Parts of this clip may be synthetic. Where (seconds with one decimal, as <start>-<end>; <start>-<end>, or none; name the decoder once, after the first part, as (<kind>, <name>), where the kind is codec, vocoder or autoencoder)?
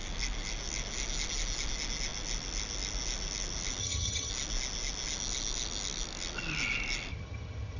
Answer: 3.8-4.3 (vocoder, HiFi-GAN); 7.1-7.8